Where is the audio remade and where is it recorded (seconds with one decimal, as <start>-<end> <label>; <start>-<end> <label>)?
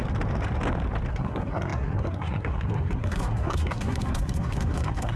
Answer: 0.0-1.1 recorded; 1.1-5.2 remade